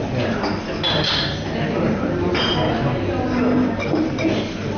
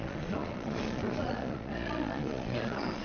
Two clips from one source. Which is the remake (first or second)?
second